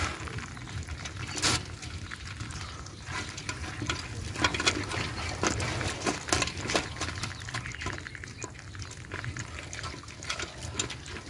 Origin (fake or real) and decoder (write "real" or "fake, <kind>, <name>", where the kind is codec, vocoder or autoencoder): real